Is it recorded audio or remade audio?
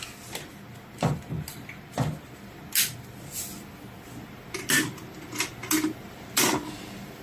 recorded